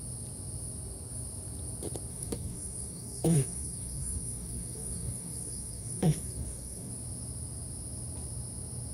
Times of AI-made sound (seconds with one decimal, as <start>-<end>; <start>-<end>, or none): 2.1-6.9